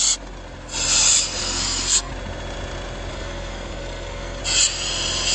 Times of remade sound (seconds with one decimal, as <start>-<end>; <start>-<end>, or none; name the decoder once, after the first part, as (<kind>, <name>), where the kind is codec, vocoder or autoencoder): 1.4-2.1 (codec, SNAC); 3.1-4.4